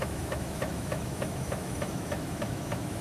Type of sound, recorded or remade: remade